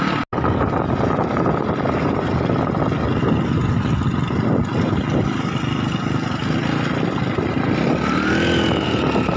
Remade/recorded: recorded